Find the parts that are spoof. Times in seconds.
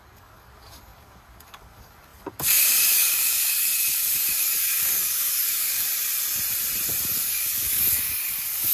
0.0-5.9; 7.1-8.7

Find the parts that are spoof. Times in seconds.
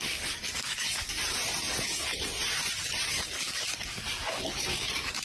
0.0-1.2; 3.1-5.2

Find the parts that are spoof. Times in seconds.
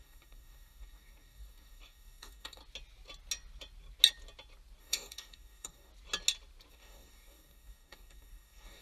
0.0-2.6; 4.8-5.9; 6.7-8.8